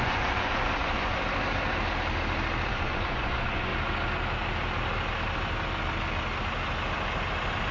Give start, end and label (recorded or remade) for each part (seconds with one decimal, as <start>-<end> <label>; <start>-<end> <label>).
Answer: 0.0-1.2 remade; 1.2-2.7 recorded; 2.7-3.7 remade; 3.7-7.7 recorded